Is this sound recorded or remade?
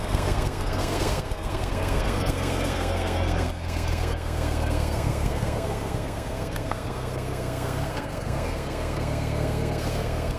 remade